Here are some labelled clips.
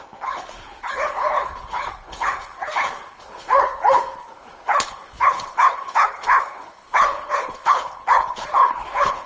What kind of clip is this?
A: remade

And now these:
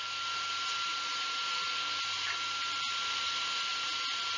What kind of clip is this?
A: recorded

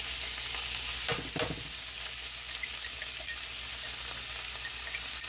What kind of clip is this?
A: recorded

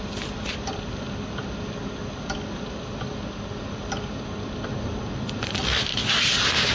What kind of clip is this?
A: recorded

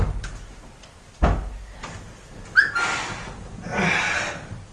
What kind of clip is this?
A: recorded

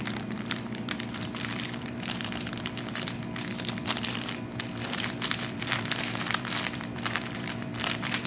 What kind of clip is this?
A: remade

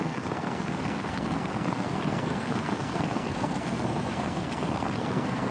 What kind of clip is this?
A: remade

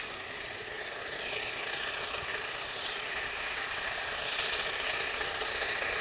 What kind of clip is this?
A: recorded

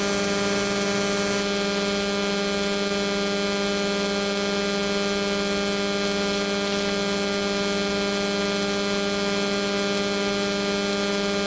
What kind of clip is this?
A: recorded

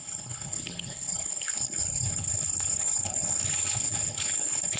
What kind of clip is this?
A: remade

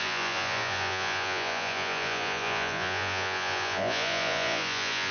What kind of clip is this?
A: remade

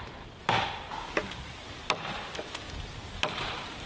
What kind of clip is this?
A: recorded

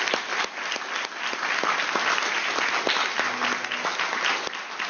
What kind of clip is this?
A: recorded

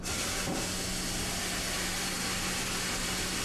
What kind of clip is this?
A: recorded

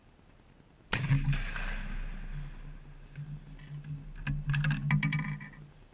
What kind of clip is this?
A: recorded